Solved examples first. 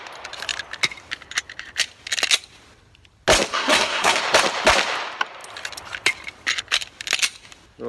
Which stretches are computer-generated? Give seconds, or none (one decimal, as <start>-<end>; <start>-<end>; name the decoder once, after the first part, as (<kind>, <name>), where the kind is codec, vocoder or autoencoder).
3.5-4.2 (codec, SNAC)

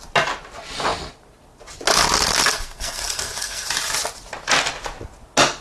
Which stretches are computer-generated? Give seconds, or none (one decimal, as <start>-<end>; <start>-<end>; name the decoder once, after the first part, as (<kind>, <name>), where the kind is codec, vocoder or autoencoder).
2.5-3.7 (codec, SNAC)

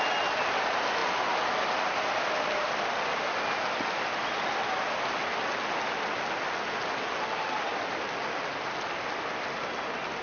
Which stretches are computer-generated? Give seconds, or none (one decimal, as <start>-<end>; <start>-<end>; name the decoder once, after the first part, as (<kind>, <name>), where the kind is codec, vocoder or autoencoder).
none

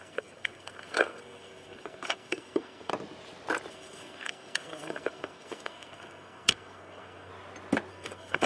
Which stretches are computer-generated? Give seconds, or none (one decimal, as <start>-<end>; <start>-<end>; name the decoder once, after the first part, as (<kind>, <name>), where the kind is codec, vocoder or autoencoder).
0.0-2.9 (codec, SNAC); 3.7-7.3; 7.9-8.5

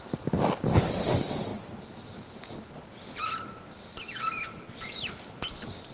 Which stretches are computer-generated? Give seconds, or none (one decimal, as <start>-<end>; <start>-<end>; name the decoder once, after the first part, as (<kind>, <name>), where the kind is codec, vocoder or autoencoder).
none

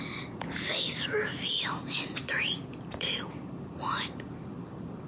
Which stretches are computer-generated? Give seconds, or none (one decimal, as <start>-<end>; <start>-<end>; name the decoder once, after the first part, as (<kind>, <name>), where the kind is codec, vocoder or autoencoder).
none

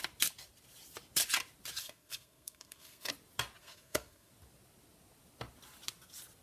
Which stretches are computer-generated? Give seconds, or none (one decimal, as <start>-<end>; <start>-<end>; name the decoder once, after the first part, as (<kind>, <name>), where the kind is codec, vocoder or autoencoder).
1.8-3.1 (codec, SNAC); 3.6-4.3